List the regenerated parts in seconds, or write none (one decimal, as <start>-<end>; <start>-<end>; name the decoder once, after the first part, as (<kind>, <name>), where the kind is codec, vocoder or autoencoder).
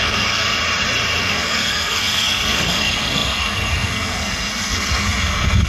0.0-0.6 (codec, SNAC); 1.2-5.7